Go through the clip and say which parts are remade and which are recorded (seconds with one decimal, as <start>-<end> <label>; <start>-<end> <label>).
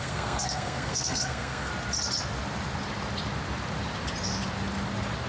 0.0-1.7 remade; 1.7-5.3 recorded